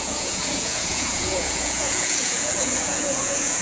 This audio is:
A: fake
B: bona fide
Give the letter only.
A